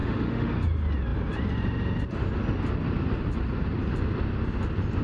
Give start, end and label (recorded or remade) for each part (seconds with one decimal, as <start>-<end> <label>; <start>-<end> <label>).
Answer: 0.0-0.5 remade; 0.5-5.0 recorded